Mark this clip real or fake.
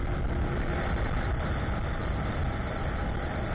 real